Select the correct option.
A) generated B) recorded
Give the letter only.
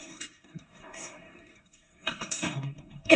A